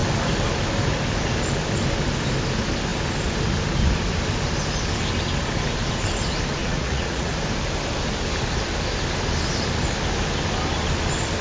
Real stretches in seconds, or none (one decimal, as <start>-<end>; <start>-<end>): 0.0-6.6; 7.3-11.4